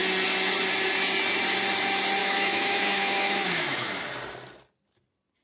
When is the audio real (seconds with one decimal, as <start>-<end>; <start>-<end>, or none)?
0.0-2.2; 4.0-5.4